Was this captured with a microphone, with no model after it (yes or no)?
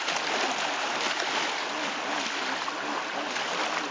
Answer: no